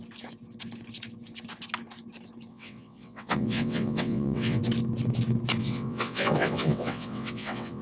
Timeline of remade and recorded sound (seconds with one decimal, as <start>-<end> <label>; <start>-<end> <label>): 0.0-2.5 recorded; 2.5-4.6 remade; 4.6-5.6 recorded; 5.6-7.8 remade